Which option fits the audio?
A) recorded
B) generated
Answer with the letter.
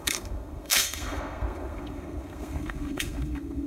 B